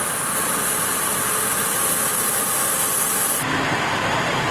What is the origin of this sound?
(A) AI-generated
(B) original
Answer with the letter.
B